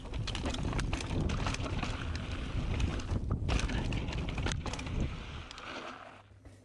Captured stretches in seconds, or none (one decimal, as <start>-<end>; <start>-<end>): 0.0-0.5; 2.0-2.9; 6.1-6.6